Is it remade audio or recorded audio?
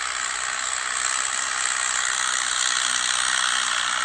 recorded